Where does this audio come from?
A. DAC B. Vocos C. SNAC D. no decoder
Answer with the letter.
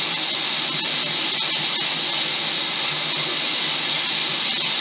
D